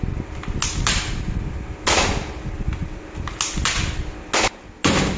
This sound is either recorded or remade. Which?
recorded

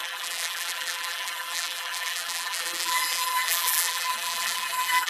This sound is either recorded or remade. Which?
remade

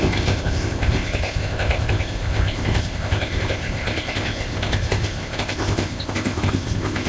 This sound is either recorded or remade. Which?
remade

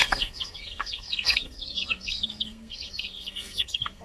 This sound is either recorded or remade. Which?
remade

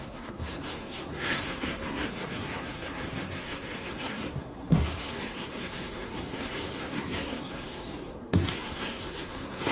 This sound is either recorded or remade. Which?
remade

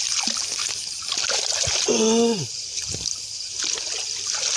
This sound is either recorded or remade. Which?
recorded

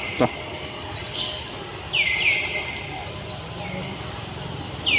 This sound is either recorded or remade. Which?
recorded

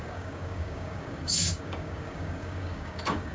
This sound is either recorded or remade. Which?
remade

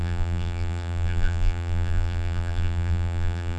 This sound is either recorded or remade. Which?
remade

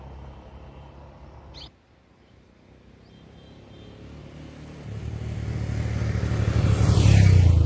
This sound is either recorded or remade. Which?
recorded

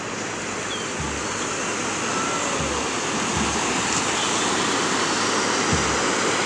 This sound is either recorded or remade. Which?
recorded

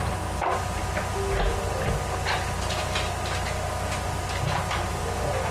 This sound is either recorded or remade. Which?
recorded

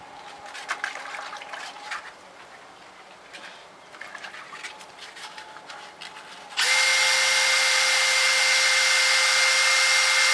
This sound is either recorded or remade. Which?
recorded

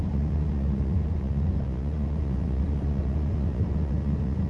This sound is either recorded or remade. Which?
remade